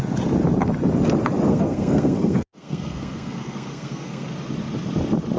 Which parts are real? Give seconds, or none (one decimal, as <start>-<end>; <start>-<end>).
0.0-1.5; 4.3-5.4